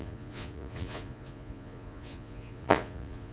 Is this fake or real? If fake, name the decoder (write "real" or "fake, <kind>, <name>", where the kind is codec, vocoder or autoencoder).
fake, vocoder, Vocos